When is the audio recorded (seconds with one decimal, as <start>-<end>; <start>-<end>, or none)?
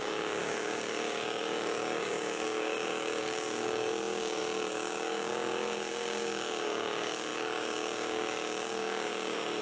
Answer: none